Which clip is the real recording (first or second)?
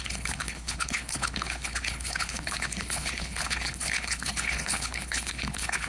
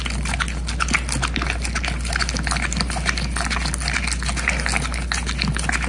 second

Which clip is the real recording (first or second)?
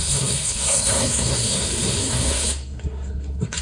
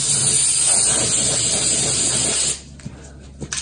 second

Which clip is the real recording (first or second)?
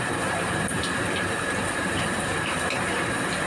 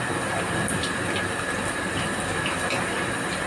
second